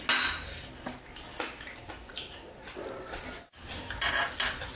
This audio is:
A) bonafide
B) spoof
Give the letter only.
A